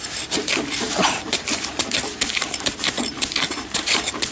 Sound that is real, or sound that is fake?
fake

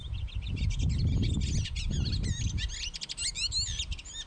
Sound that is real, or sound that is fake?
real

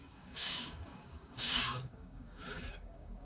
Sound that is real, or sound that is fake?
fake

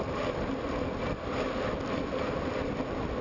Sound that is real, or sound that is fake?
real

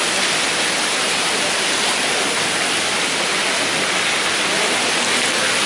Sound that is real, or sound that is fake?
real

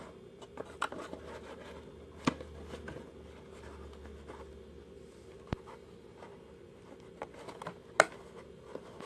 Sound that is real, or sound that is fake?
real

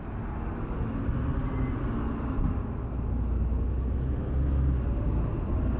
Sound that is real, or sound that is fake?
real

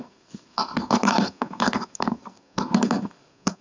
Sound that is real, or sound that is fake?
fake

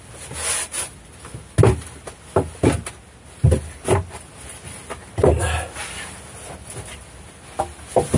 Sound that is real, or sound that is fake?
real